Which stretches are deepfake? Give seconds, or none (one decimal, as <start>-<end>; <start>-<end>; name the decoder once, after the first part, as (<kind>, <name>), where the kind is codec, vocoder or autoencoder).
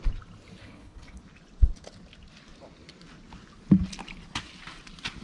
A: 0.6-1.2 (codec, HILCodec)